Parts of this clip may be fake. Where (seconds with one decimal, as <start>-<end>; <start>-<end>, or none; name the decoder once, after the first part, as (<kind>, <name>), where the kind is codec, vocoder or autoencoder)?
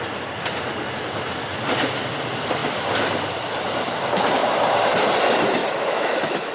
5.6-6.5 (autoencoder, DAC-VAE)